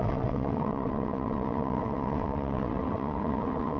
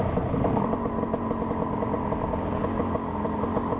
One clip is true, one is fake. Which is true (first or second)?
second